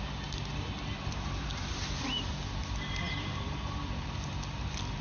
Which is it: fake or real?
real